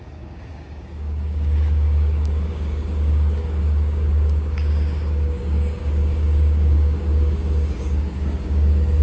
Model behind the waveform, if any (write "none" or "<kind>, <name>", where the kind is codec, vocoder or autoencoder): codec, DAC